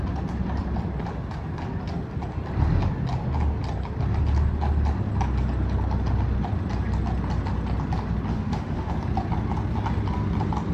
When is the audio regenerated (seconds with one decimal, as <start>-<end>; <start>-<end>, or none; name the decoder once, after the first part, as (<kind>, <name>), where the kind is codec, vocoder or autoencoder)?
8.3-8.9 (autoencoder, DAC-VAE)